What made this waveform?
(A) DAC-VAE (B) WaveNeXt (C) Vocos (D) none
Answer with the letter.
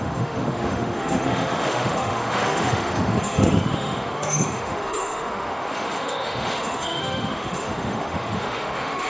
A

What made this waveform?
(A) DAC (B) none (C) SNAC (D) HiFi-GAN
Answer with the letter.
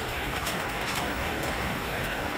A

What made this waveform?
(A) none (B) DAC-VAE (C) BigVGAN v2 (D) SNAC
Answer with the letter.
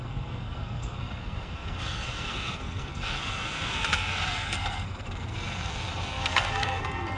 D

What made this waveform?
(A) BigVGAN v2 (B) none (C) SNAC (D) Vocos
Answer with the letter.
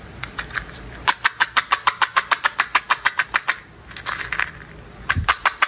B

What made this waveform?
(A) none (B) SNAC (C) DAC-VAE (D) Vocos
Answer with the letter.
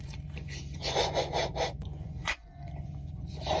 D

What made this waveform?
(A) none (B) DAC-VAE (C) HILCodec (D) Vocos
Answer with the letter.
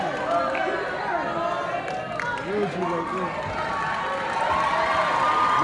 A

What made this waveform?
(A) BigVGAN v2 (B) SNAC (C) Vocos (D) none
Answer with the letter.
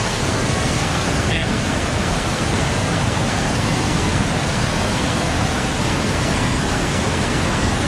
B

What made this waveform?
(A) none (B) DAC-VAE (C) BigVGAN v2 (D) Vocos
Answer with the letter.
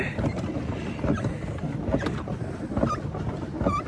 A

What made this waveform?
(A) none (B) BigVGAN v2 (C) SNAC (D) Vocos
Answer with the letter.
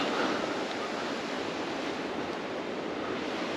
A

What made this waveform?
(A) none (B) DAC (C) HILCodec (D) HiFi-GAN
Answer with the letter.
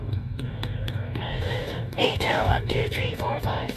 B